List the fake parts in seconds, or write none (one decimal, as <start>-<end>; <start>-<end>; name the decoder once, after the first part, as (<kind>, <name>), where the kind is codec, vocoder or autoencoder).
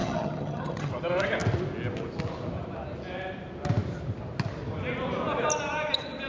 0.0-0.9 (vocoder, HiFi-GAN)